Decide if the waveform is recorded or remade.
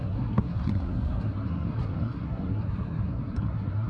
remade